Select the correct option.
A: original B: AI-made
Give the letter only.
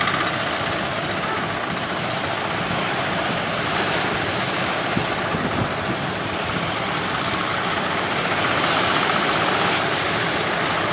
A